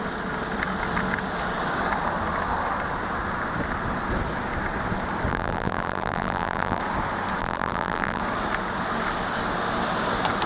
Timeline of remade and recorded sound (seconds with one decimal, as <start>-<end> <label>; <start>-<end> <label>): 0.0-5.3 recorded; 5.3-6.8 remade; 6.8-7.4 recorded; 7.4-8.2 remade; 8.2-10.5 recorded